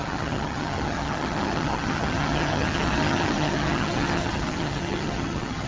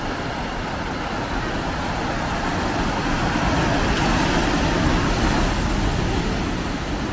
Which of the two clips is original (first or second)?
second